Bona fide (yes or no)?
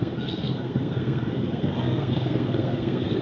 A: no